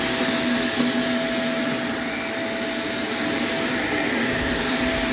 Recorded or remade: recorded